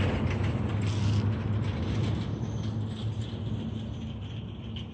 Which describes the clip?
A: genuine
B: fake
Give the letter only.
A